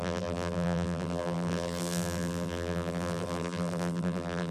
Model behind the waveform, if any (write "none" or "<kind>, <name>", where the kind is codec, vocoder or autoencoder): vocoder, BigVGAN v2